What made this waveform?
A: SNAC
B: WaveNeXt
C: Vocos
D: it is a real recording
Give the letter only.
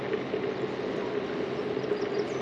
D